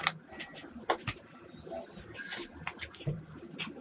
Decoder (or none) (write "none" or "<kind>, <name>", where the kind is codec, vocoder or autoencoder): none